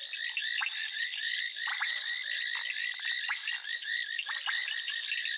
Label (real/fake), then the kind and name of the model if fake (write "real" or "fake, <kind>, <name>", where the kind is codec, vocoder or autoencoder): real